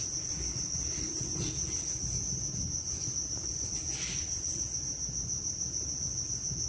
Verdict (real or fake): real